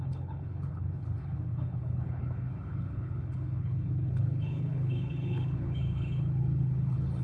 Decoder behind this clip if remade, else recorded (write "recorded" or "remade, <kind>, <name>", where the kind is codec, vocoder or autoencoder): remade, codec, HILCodec